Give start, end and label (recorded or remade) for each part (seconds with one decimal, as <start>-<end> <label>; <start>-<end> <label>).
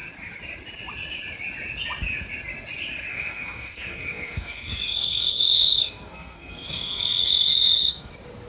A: 0.0-3.1 recorded; 3.1-8.1 remade; 8.1-8.5 recorded